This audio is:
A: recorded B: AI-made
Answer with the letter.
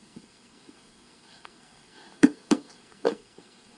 B